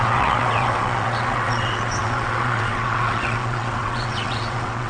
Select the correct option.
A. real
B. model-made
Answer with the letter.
B